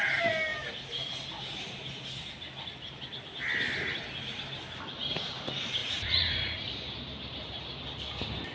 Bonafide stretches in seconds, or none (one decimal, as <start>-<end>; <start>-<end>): 0.0-5.8; 6.7-8.5